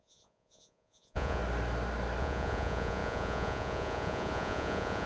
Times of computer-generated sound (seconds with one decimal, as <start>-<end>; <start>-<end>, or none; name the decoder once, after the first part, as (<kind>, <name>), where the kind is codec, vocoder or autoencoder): 0.0-1.4 (vocoder, Vocos); 2.2-5.1